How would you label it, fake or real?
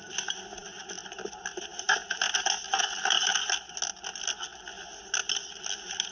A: real